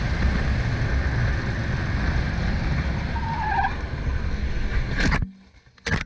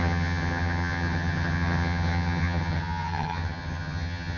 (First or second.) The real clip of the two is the first